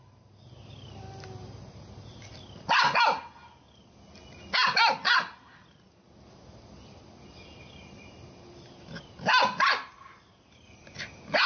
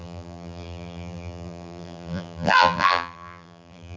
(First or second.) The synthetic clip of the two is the second